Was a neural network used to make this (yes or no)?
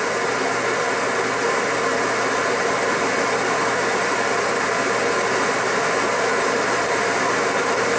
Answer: no